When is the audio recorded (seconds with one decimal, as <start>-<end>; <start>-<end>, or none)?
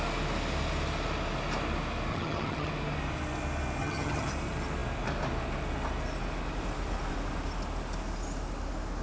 0.0-2.1; 2.7-3.8; 4.3-9.0